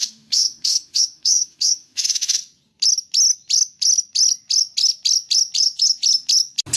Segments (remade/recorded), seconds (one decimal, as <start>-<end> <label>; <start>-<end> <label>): 0.0-2.4 remade; 2.4-6.8 recorded